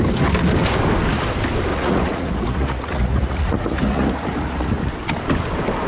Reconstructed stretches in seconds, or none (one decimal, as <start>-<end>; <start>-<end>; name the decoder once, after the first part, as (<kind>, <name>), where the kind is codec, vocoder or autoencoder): 1.7-4.9 (vocoder, Vocos)

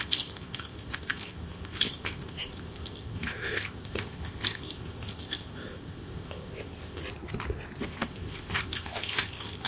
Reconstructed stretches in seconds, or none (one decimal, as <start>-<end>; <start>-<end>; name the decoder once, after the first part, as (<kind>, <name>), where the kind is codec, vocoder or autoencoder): 0.0-7.0 (codec, ZipCodec); 7.8-9.7

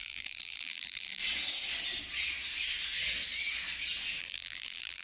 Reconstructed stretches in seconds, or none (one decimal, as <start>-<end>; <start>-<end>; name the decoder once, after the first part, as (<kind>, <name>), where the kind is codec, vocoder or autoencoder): 0.0-1.2 (vocoder, BigVGAN v2); 4.2-5.0

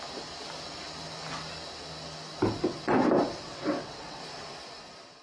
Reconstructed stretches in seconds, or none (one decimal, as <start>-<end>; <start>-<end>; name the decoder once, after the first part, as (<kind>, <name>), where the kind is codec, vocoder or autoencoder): 3.4-4.2 (vocoder, WaveNeXt)